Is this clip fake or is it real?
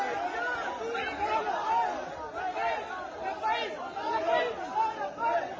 real